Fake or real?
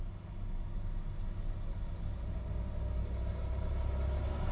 real